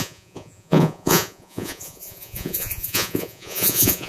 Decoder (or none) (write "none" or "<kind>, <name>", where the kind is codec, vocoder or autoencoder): vocoder, Vocos